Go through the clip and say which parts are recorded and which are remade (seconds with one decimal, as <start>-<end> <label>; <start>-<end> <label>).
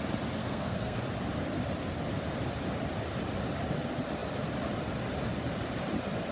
0.0-0.4 recorded; 0.4-1.0 remade; 1.0-6.3 recorded